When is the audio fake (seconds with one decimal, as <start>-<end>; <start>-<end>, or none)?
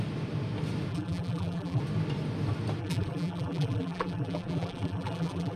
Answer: 0.9-1.8; 2.8-5.6